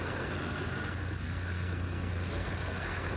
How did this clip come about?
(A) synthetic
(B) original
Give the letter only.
A